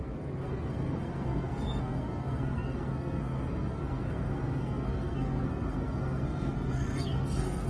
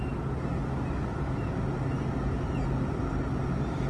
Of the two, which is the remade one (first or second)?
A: first